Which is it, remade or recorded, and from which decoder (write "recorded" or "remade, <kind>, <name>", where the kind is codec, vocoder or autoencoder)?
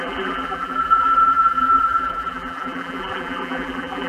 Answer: remade, vocoder, BigVGAN v2